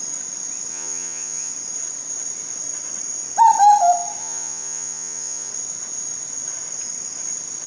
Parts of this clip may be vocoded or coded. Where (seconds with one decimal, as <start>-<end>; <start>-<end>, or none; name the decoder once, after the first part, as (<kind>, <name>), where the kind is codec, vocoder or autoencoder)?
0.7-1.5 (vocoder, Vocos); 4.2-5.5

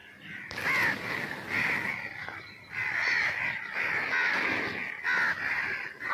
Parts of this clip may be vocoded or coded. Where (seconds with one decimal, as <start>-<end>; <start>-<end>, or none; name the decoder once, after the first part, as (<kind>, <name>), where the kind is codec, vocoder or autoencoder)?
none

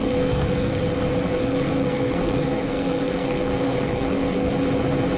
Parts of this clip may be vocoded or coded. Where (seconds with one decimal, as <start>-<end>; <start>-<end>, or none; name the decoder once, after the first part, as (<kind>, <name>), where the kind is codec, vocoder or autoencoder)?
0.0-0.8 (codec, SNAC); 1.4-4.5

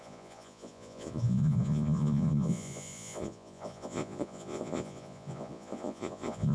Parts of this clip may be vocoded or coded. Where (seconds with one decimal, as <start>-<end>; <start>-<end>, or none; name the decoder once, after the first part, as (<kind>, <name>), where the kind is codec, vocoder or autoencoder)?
0.0-6.5 (vocoder, Vocos)